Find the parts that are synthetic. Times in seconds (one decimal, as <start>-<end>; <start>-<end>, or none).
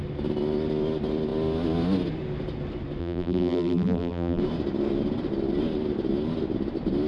3.0-4.4